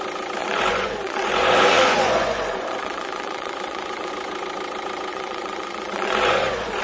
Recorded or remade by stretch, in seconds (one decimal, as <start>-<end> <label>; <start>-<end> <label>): 0.0-0.4 recorded; 0.4-4.1 remade; 4.1-5.1 recorded; 5.1-6.8 remade